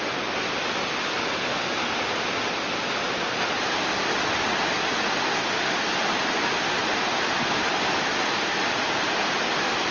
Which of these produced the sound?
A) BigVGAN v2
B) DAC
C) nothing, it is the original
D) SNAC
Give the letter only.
C